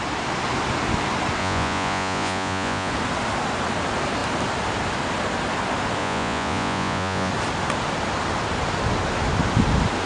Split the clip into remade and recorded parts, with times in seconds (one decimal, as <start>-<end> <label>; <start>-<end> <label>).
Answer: 0.0-1.4 recorded; 1.4-2.9 remade; 2.9-6.0 recorded; 6.0-7.3 remade; 7.3-10.1 recorded